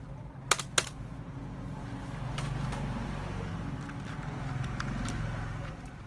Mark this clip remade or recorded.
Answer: recorded